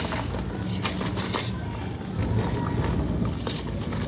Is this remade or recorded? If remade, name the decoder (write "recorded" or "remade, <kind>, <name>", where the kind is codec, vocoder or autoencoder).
recorded